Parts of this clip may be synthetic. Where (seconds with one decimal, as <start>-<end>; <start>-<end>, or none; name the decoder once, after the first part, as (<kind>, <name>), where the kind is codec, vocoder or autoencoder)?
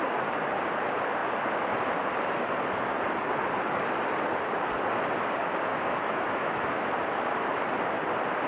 5.7-6.9 (autoencoder, DAC-VAE)